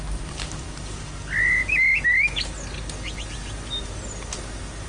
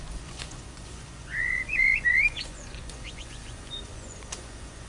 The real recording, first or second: first